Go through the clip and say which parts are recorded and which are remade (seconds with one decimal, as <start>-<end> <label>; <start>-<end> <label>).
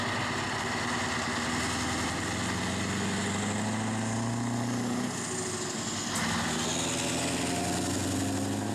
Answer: 0.0-8.7 recorded